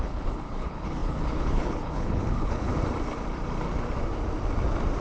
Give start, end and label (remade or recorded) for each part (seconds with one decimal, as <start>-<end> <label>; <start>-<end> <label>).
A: 0.0-2.7 remade; 2.7-5.0 recorded